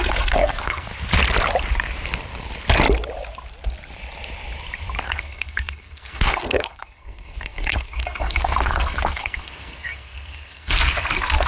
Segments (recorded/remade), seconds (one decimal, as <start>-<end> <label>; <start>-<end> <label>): 0.0-0.9 remade; 0.9-5.0 recorded; 5.0-11.5 remade